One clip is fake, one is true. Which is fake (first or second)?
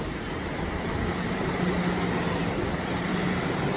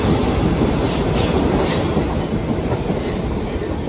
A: first